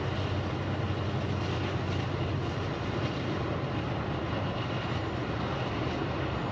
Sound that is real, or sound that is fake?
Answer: real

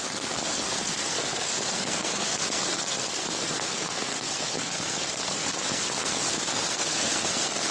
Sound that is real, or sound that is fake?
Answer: fake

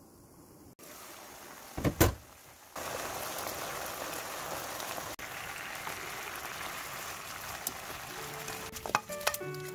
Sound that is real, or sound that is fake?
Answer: real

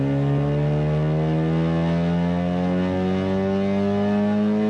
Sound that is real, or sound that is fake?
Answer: real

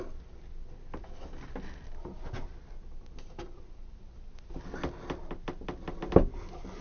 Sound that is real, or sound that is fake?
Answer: real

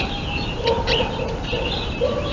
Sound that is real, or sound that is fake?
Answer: real